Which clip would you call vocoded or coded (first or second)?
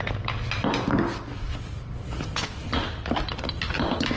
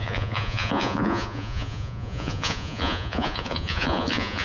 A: second